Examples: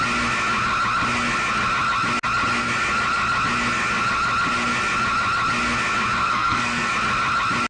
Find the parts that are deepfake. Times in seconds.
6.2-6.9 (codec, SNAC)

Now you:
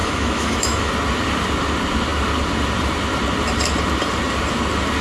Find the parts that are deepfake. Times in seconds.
0.0-0.9 (autoencoder, DAC-VAE)